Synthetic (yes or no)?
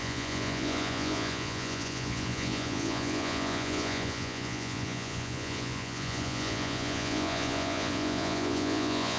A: yes